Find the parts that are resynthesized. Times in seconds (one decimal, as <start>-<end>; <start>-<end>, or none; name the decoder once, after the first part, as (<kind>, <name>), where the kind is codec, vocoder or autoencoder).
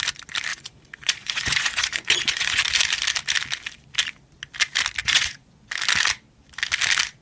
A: 0.5-2.6 (vocoder, Vocos); 5.0-5.7